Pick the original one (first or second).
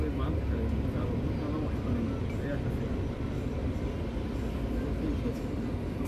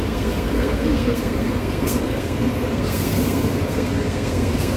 first